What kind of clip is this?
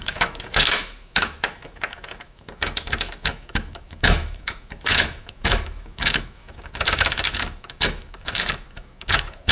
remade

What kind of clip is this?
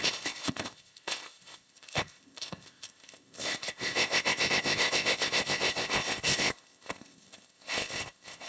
remade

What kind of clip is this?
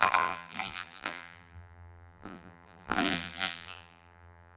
remade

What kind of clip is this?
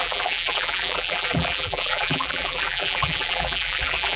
remade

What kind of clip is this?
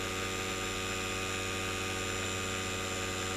recorded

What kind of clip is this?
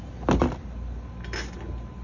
recorded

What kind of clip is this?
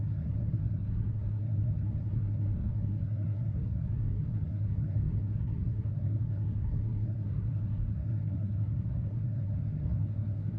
remade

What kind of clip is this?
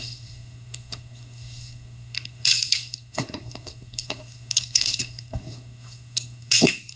remade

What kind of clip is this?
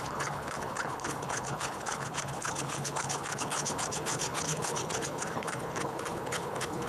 remade